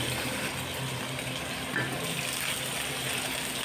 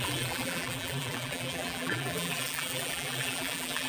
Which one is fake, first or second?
second